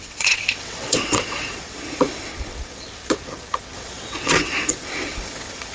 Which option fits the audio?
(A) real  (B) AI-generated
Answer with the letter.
B